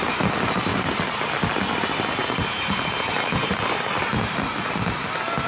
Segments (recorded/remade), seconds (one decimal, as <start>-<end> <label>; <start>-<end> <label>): 0.0-0.7 recorded; 0.7-1.2 remade; 1.2-2.2 recorded; 2.2-4.8 remade; 4.8-5.5 recorded